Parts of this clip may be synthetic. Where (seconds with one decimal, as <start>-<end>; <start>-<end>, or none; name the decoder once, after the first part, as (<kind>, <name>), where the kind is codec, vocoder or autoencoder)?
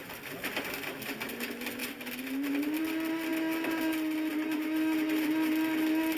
none